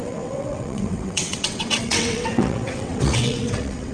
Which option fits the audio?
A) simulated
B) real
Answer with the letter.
A